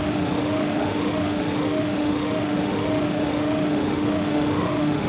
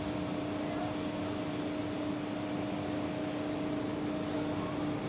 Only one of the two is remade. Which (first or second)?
first